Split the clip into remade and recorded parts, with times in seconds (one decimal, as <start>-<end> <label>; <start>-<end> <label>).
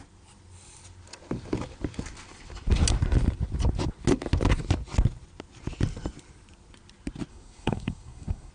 0.0-7.3 recorded; 7.3-8.5 remade